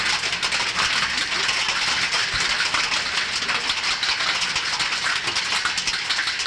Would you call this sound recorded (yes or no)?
yes